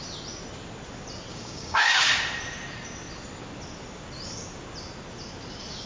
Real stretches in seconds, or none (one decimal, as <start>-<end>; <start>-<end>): 0.0-1.3; 2.1-5.9